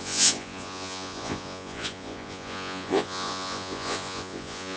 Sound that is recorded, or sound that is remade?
remade